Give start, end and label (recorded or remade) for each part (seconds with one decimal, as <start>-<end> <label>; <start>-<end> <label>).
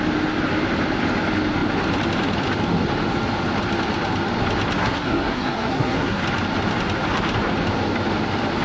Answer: 0.0-4.8 recorded; 4.8-6.2 remade; 6.2-8.6 recorded